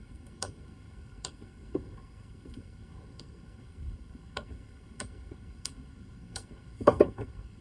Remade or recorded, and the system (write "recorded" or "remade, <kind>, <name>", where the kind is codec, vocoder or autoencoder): remade, codec, SNAC